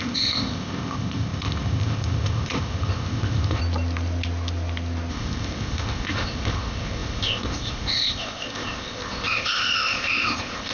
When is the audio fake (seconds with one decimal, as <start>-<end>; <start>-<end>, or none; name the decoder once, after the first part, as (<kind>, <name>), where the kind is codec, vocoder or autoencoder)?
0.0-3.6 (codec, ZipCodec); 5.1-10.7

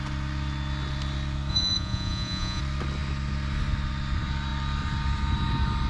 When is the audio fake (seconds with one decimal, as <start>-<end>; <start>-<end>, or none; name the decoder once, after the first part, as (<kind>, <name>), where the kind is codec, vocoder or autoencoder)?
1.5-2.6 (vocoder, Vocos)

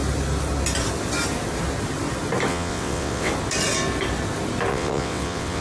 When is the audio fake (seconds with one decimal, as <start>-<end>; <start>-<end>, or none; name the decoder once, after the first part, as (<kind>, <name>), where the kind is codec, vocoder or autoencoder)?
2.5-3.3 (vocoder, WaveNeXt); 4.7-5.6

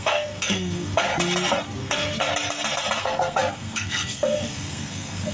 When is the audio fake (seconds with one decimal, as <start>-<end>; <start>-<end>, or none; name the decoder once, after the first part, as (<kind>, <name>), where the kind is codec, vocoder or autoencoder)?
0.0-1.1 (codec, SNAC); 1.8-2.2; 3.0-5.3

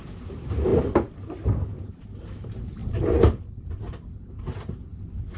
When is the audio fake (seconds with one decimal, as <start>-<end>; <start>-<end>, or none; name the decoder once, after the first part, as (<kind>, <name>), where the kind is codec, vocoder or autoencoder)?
none